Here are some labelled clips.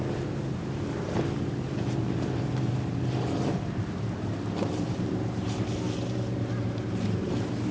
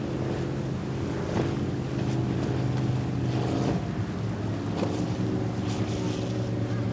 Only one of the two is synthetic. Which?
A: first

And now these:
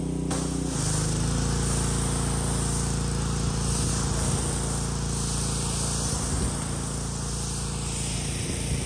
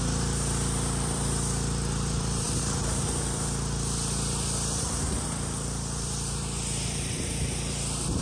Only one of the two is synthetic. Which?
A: second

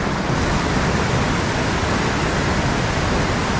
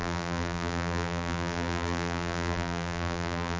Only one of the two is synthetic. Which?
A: second